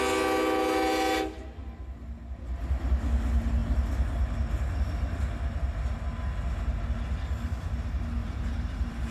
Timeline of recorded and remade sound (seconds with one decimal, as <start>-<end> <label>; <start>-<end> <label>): 0.0-8.2 recorded; 8.2-9.1 remade